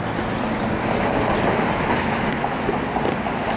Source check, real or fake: real